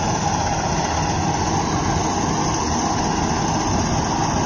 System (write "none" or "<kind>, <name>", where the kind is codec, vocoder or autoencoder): none